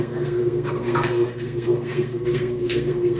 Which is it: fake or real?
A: fake